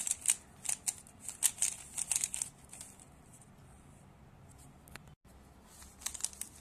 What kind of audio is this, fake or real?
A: real